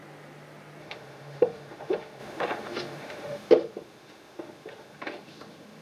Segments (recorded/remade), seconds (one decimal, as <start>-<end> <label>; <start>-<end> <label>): 0.0-0.8 recorded; 0.8-5.8 remade